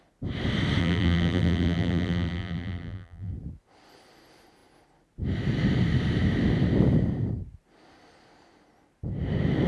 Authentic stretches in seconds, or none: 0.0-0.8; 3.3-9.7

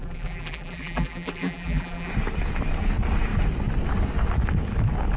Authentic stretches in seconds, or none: 2.1-5.2

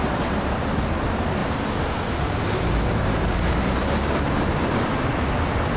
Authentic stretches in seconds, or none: 0.0-1.4; 4.9-5.8

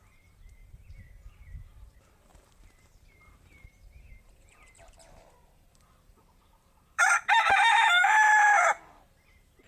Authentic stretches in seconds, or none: none

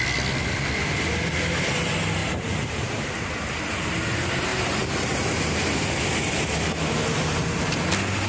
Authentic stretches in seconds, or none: 0.0-2.2; 2.9-8.3

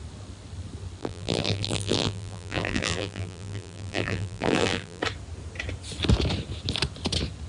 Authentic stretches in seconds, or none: 0.0-1.0; 5.0-7.5

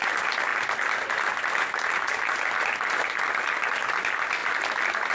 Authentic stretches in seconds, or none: 0.0-5.1

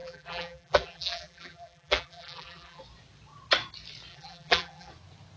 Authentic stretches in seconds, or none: 2.8-4.1; 4.9-5.4